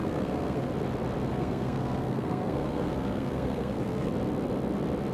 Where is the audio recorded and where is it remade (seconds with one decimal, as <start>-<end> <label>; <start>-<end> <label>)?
0.0-0.7 remade; 0.7-1.3 recorded; 1.3-4.1 remade; 4.1-5.1 recorded

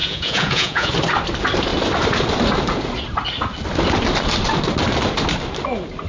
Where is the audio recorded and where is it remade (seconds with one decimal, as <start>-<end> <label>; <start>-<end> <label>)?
0.0-0.9 remade; 0.9-6.1 recorded

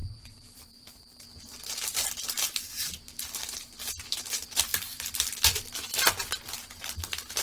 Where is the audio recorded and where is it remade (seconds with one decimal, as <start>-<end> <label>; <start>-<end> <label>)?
0.0-1.2 remade; 1.2-4.7 recorded; 4.7-5.4 remade; 5.4-7.4 recorded

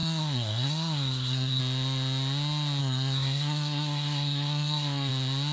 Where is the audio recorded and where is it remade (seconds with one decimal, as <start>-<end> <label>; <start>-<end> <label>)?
0.0-1.6 remade; 1.6-2.8 recorded; 2.8-5.1 remade; 5.1-5.5 recorded

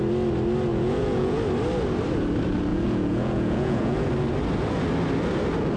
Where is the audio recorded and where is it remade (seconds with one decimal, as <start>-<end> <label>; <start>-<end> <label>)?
0.0-0.7 recorded; 0.7-1.4 remade; 1.4-2.7 recorded; 2.7-4.1 remade; 4.1-5.8 recorded